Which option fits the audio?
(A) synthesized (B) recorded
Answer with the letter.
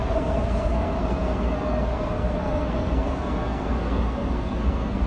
A